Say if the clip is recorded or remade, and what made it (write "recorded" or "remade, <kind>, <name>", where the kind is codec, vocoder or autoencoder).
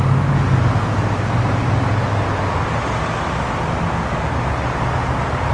recorded